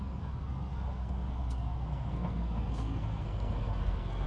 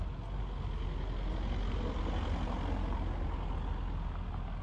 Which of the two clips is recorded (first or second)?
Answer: second